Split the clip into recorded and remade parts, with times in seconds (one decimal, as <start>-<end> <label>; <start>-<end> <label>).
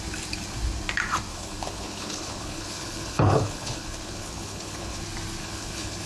0.0-1.3 recorded; 1.3-5.0 remade; 5.0-5.4 recorded; 5.4-6.1 remade